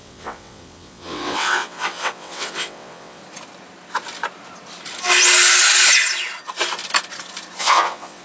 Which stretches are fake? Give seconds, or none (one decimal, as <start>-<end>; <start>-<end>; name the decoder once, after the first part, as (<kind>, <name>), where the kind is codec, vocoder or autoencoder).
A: 0.0-3.2 (vocoder, WaveNeXt); 7.6-8.2